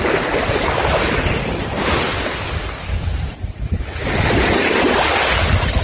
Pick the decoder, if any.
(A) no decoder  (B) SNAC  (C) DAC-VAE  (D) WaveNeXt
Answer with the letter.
A